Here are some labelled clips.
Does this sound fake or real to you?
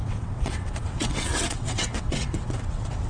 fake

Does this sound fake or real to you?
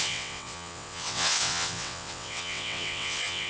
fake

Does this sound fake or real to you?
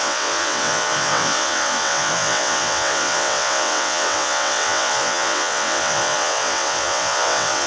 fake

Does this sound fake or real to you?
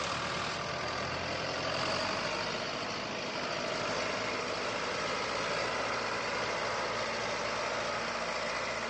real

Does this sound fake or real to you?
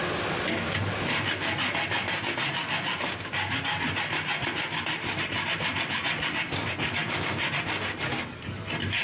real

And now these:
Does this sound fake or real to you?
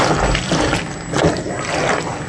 real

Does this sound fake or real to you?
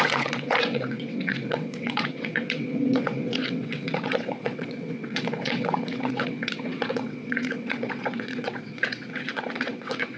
fake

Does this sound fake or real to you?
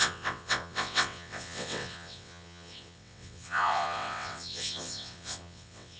fake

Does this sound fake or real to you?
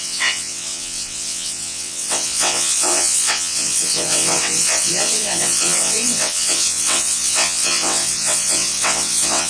fake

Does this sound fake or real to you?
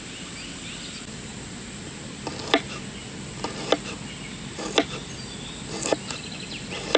real